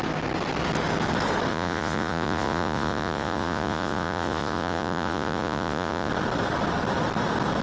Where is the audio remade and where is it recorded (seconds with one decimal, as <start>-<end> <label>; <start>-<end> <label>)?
0.0-1.5 recorded; 1.5-6.1 remade; 6.1-7.6 recorded